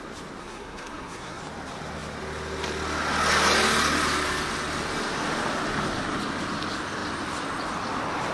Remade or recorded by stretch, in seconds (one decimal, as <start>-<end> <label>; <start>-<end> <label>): 0.0-0.4 recorded; 0.4-1.4 remade; 1.4-8.3 recorded